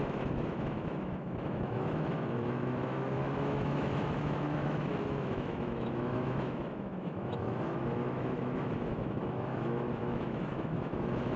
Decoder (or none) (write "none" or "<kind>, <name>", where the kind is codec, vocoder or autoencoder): autoencoder, DAC-VAE